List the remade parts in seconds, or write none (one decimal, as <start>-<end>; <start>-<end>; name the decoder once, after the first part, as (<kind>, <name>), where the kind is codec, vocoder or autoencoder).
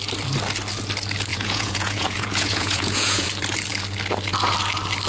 1.3-3.3 (vocoder, Vocos)